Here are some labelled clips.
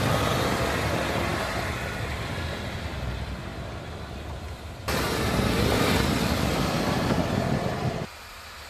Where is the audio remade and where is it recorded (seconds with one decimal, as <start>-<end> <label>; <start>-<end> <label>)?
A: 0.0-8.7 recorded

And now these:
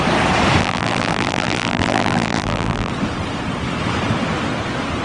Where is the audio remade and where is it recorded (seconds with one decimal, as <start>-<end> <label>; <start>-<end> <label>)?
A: 0.0-0.6 recorded; 0.6-2.9 remade; 2.9-5.0 recorded

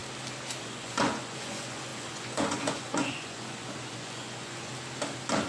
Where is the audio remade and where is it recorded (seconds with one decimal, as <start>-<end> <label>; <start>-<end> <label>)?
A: 0.0-0.6 recorded; 0.6-4.7 remade; 4.7-5.5 recorded

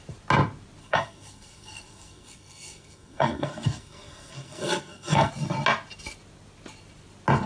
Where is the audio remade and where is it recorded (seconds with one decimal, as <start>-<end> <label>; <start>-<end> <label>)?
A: 0.0-0.8 recorded; 0.8-5.3 remade; 5.3-7.5 recorded

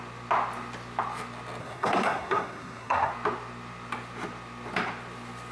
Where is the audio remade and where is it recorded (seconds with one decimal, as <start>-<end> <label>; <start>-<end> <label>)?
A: 0.0-1.6 recorded; 1.6-3.1 remade; 3.1-5.5 recorded